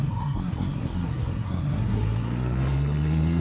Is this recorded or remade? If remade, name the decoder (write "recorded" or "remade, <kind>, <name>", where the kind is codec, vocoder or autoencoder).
remade, codec, SNAC